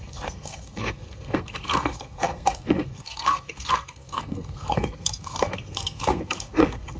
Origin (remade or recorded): remade